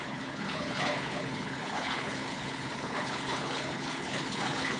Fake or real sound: fake